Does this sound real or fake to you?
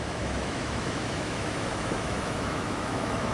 fake